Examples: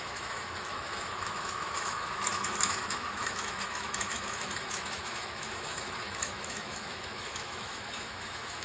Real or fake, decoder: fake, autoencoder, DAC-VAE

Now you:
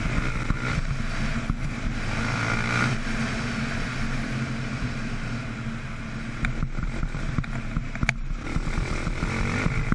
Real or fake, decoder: real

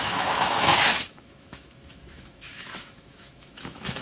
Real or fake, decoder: fake, autoencoder, DAC-VAE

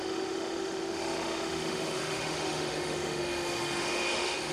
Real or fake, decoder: fake, autoencoder, DAC-VAE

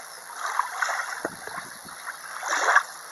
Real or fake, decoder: real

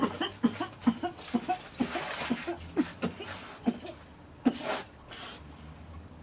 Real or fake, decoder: real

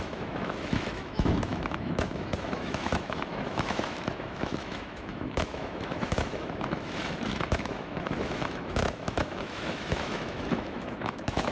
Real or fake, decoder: fake, autoencoder, DAC-VAE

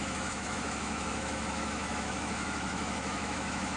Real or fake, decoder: fake, autoencoder, DAC-VAE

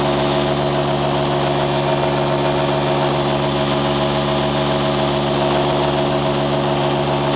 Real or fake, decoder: real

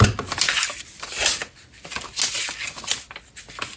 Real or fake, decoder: real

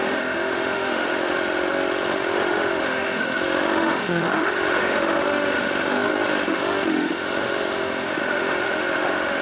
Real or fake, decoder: fake, autoencoder, DAC-VAE